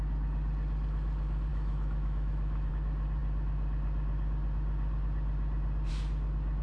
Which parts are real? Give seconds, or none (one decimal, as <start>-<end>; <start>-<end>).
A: 0.0-1.5; 2.7-6.6